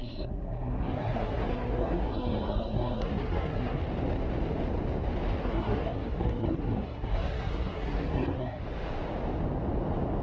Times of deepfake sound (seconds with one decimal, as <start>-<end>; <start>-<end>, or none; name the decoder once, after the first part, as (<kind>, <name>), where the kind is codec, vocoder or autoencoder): 0.0-3.8 (codec, SNAC); 5.4-8.6